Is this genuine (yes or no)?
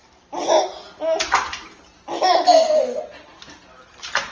yes